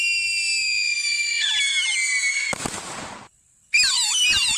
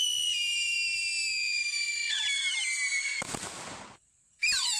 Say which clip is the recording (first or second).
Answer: first